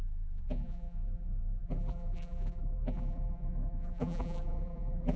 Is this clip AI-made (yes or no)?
yes